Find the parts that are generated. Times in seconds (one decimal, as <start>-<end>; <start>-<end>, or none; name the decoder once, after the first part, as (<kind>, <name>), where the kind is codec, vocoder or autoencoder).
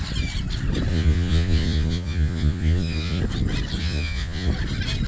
0.9-3.2 (vocoder, Vocos); 3.8-4.5